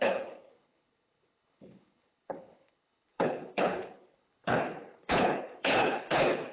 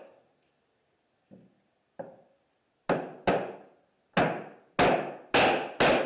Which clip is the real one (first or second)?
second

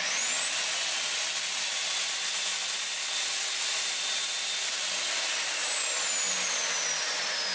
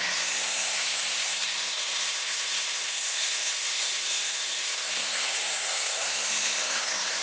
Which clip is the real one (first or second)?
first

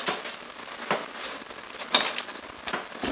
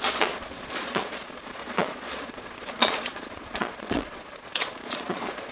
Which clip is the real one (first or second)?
first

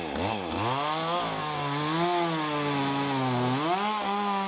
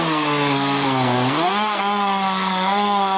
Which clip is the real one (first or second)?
first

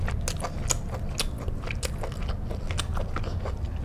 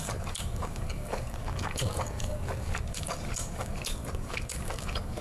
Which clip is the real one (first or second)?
first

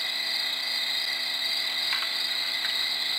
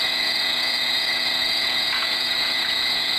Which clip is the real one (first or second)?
first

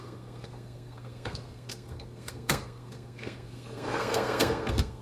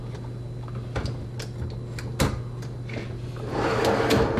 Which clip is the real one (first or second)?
second